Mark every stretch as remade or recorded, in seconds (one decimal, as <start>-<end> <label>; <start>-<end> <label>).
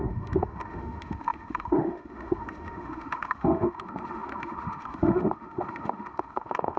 0.0-6.8 remade